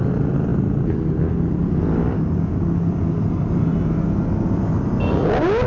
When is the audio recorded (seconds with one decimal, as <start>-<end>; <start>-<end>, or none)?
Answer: 0.0-5.7